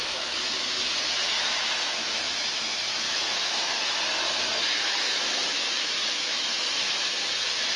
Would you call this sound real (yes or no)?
no